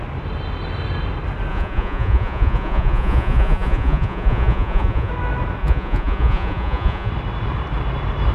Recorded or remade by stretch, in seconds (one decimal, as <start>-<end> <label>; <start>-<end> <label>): 0.0-1.5 recorded; 1.5-5.1 remade; 5.1-5.6 recorded; 5.6-7.1 remade; 7.1-8.3 recorded